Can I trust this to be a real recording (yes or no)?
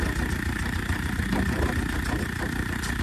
yes